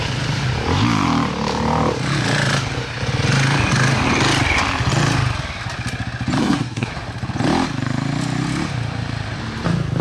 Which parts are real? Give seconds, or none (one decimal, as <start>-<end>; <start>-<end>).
0.0-6.4; 6.9-10.0